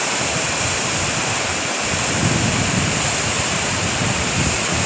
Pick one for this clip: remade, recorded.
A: remade